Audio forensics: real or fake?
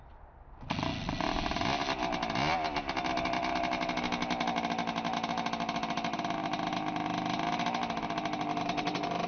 real